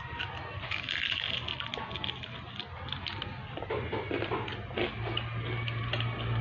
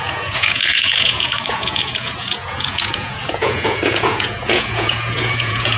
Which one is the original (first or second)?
first